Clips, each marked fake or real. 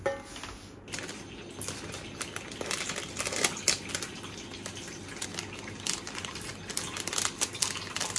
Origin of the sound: real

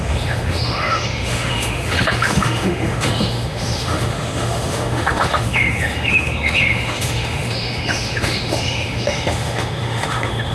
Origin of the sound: fake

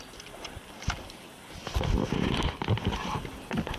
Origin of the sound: real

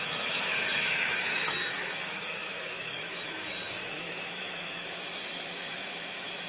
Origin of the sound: fake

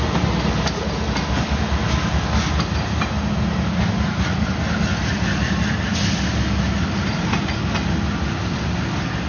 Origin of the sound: real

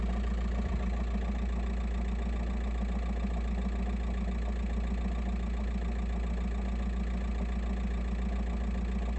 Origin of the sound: real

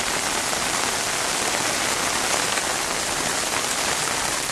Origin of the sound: real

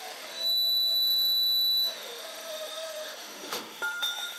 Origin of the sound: fake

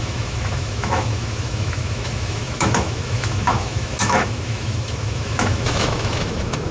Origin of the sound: fake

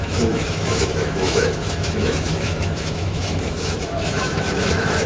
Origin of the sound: fake